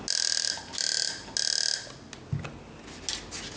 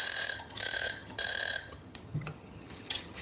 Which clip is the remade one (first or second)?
second